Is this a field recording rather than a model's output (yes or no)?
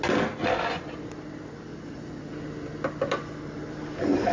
yes